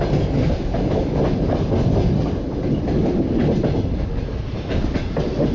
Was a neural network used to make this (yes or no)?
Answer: no